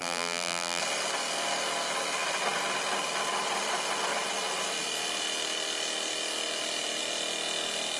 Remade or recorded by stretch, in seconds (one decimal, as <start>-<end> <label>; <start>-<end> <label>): 0.0-0.8 remade; 0.8-8.0 recorded